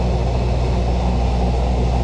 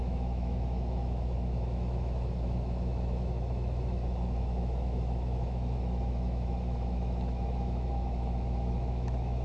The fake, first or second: second